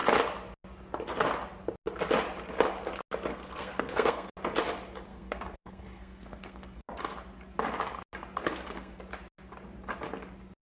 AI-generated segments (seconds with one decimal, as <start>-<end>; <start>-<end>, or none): 3.3-4.3; 5.1-6.9; 8.5-9.0